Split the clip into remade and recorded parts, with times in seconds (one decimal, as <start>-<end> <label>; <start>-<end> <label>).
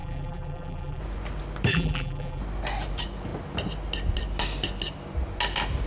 0.0-1.0 remade; 1.0-1.7 recorded; 1.7-2.4 remade; 2.4-5.9 recorded